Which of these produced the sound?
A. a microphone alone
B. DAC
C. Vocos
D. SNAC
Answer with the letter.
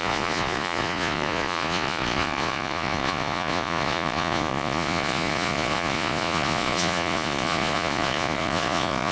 C